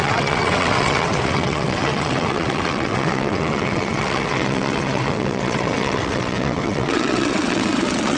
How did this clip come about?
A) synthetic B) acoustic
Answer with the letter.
A